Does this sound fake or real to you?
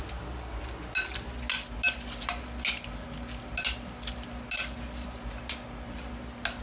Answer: real